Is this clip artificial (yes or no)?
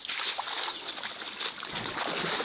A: no